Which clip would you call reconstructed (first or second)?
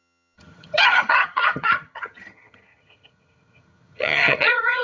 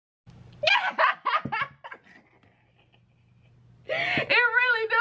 first